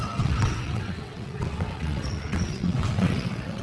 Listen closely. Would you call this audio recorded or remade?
remade